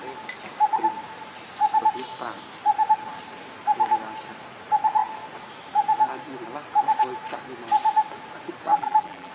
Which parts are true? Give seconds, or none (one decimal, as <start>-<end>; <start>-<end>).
0.0-8.7